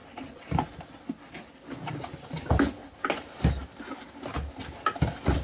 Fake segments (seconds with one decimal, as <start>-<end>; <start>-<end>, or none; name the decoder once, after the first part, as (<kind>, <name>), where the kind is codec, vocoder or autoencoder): none